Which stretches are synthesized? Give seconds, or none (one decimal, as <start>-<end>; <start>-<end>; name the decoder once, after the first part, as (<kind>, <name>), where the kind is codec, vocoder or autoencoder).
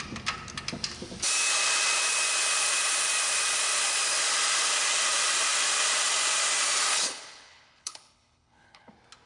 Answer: 6.9-8.9 (codec, HILCodec)